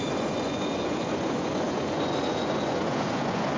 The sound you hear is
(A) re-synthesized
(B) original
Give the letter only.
A